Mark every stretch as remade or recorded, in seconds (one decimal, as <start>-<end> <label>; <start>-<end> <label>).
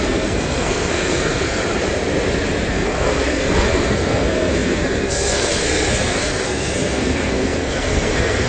0.0-1.6 remade; 1.6-2.7 recorded; 2.7-8.5 remade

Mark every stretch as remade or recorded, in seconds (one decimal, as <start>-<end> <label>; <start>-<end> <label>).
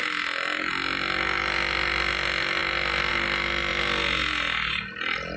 0.0-5.4 recorded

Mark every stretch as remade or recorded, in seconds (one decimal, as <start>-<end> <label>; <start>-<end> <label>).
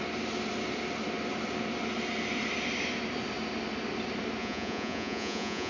0.0-4.4 recorded; 4.4-5.7 remade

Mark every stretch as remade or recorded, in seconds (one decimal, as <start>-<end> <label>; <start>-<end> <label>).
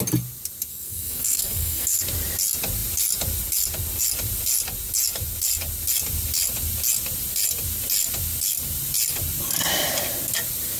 0.0-0.7 recorded; 0.7-2.0 remade; 2.0-10.8 recorded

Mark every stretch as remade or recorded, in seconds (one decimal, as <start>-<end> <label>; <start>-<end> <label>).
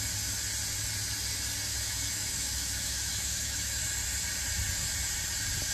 0.0-1.7 recorded; 1.7-3.8 remade; 3.8-5.7 recorded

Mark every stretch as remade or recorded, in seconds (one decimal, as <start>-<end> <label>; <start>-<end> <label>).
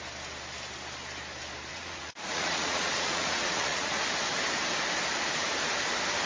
0.0-1.7 recorded; 1.7-4.0 remade; 4.0-6.3 recorded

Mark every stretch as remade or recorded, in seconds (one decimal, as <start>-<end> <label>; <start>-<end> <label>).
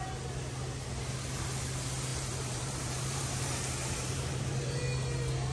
0.0-2.1 recorded; 2.1-4.8 remade; 4.8-5.5 recorded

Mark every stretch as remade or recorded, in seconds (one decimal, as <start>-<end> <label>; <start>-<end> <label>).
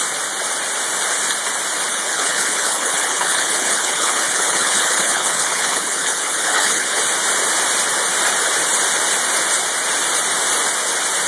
0.0-1.9 recorded; 1.9-7.0 remade; 7.0-11.3 recorded